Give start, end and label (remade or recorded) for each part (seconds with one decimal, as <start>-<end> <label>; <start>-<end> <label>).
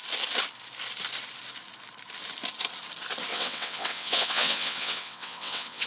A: 0.0-3.3 recorded; 3.3-5.9 remade